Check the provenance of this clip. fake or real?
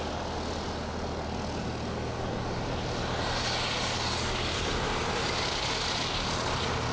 real